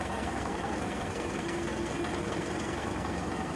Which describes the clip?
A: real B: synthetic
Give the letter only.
B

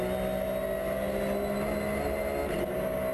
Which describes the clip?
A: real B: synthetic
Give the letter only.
A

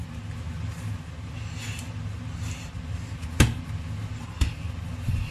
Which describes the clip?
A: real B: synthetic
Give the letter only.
A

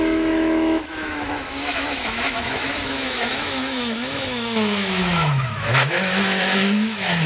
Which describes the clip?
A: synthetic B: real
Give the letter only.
A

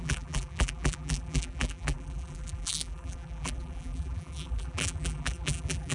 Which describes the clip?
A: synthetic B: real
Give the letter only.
A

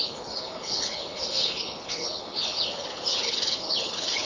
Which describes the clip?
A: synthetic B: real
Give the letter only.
A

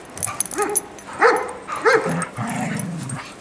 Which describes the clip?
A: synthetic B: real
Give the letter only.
B